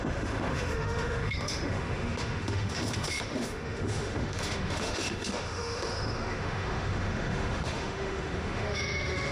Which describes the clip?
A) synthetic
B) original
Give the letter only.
A